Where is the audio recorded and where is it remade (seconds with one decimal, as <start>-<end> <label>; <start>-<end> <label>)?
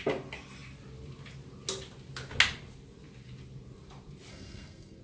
0.0-4.3 recorded; 4.3-5.0 remade